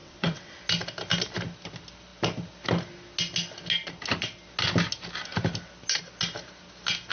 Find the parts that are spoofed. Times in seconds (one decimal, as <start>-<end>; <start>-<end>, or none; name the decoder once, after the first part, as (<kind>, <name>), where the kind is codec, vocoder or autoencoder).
0.0-0.6 (vocoder, WaveNeXt)